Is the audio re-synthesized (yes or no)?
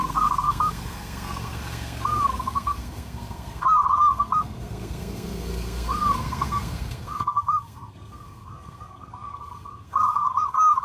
yes